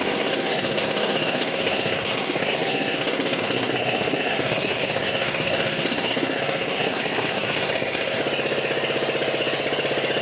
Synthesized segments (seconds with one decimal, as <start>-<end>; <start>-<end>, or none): 0.0-8.2